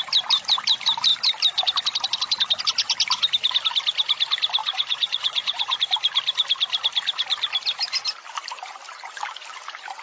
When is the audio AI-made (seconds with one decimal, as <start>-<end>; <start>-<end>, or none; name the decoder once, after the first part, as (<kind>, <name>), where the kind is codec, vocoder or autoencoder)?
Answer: 4.6-5.8 (vocoder, Vocos)